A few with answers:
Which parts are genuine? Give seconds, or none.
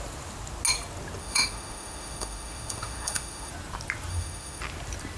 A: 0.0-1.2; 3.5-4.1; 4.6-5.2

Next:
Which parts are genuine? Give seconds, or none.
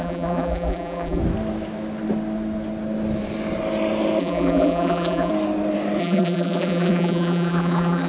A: 1.2-4.2; 5.3-6.0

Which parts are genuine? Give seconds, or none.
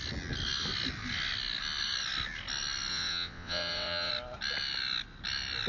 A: 0.0-2.9; 4.1-5.7